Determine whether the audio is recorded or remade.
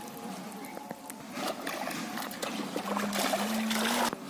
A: recorded